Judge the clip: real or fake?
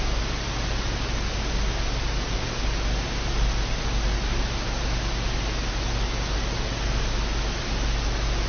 real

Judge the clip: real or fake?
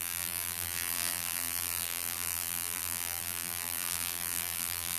fake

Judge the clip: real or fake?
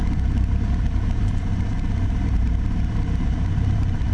fake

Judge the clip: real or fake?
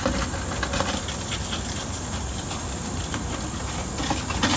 real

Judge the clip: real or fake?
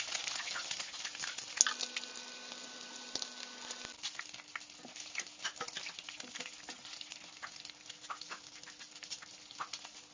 real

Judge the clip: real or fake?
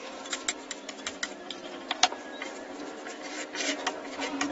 real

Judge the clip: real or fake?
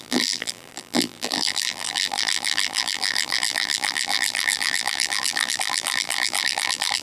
fake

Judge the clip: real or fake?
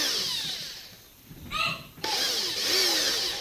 fake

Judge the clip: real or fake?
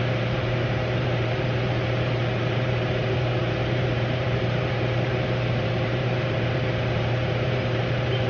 fake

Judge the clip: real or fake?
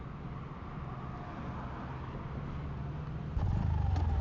real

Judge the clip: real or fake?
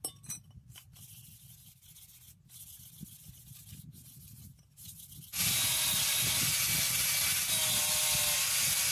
real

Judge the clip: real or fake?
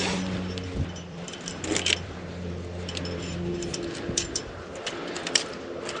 fake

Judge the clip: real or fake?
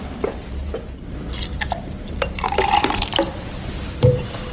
fake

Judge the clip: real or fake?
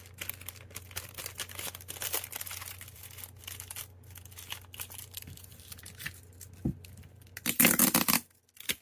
real